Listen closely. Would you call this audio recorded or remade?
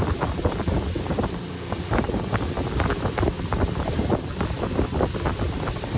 remade